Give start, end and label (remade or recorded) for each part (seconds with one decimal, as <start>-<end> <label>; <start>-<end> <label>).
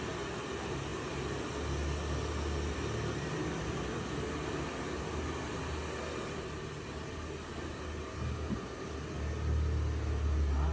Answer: 0.0-10.7 recorded